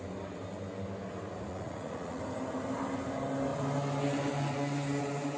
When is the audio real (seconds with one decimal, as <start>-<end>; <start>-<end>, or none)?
0.0-1.5; 2.2-5.4